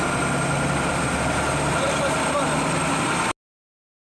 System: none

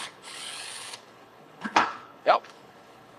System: codec, HILCodec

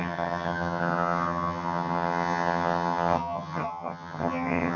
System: vocoder, HiFi-GAN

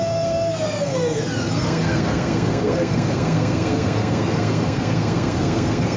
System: codec, SNAC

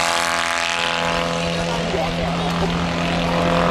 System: none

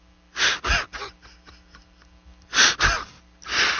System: none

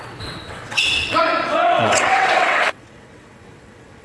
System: vocoder, WaveNeXt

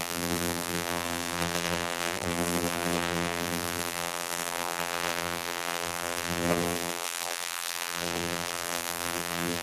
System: vocoder, BigVGAN v2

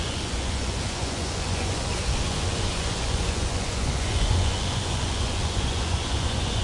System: vocoder, Vocos